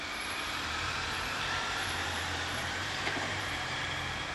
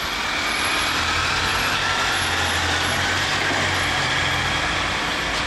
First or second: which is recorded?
second